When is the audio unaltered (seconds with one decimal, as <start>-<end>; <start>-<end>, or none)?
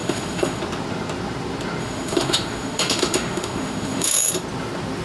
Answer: 0.6-1.8; 4.3-5.0